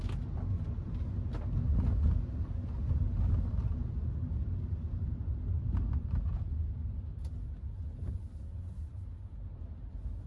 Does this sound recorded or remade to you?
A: recorded